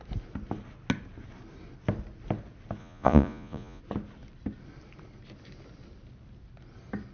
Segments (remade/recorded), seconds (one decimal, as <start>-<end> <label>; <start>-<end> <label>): 0.0-2.8 recorded; 2.8-3.8 remade; 3.8-7.1 recorded